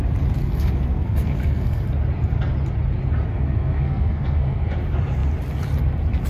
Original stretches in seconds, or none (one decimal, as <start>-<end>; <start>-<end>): 0.0-0.4; 1.8-3.3; 4.7-6.3

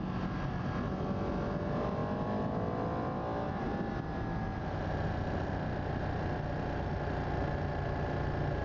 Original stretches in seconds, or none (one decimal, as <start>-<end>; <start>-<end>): 0.0-8.6

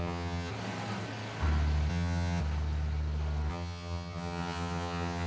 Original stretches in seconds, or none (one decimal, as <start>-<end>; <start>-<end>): 0.5-1.9; 2.4-3.5

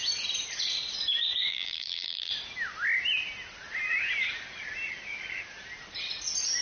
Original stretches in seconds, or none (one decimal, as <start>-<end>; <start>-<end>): 0.0-1.5; 2.3-6.6